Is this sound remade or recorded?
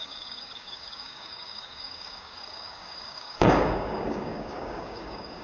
remade